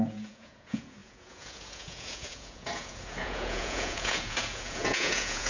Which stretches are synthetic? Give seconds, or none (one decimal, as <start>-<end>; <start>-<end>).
0.0-5.5